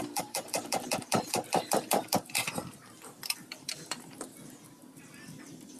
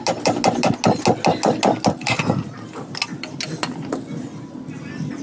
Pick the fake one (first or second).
first